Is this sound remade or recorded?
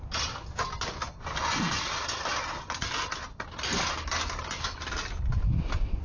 recorded